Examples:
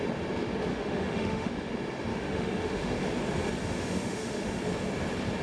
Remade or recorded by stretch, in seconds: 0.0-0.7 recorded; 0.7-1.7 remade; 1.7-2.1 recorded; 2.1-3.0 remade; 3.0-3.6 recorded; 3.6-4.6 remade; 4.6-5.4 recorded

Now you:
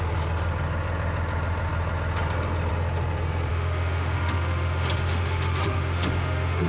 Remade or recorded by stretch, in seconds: 0.0-3.5 recorded; 3.5-6.7 remade

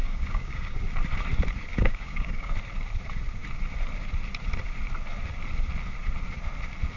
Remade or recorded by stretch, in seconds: 0.0-0.8 remade; 0.8-1.7 recorded; 1.7-2.5 remade; 2.5-7.0 recorded